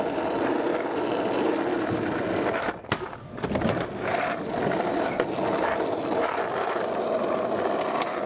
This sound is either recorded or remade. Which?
recorded